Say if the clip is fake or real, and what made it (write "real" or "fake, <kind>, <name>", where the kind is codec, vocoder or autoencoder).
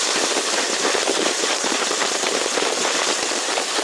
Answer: fake, vocoder, BigVGAN v2